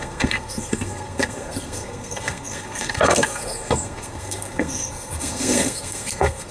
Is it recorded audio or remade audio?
remade